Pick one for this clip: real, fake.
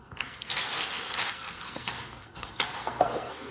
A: fake